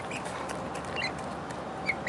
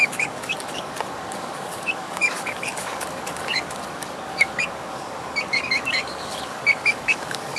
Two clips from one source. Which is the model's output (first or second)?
second